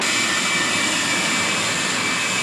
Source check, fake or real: real